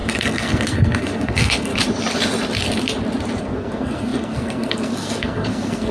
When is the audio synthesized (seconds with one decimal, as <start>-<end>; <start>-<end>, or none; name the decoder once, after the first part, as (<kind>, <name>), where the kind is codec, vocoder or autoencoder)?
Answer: 0.0-1.7 (codec, SNAC); 3.4-5.9